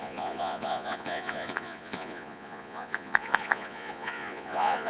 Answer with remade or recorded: remade